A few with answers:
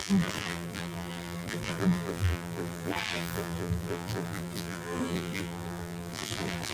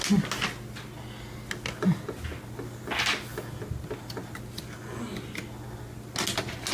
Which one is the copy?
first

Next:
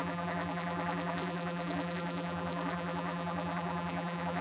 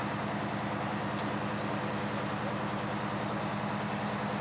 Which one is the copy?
first